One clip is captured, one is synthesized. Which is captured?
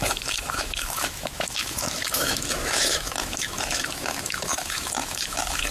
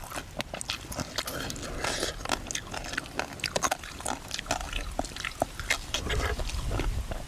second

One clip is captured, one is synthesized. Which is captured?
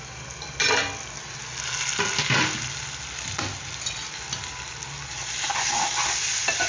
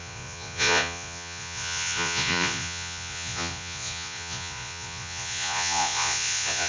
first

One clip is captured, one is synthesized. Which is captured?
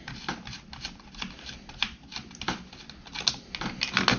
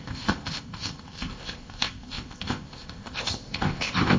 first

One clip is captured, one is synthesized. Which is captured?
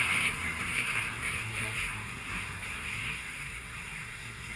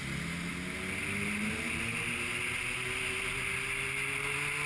second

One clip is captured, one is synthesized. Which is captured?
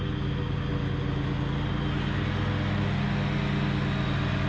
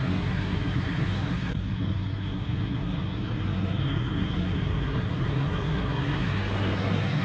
first